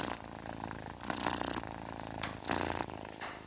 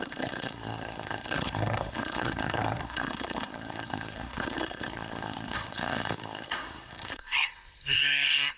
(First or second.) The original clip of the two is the first